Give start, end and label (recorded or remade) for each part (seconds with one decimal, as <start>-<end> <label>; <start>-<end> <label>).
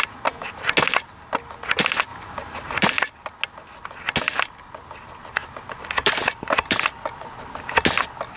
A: 0.0-2.1 recorded; 2.1-2.9 remade; 2.9-5.4 recorded; 5.4-6.8 remade; 6.8-8.4 recorded